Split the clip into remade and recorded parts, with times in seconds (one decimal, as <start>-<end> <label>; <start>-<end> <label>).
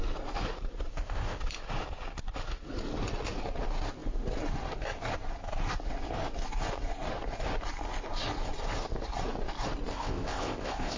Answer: 0.0-0.9 recorded; 0.9-1.4 remade; 1.4-9.9 recorded; 9.9-11.0 remade